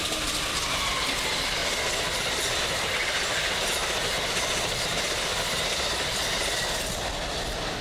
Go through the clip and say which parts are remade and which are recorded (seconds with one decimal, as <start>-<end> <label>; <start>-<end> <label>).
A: 0.0-7.8 recorded